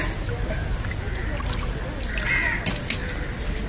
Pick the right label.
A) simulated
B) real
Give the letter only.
B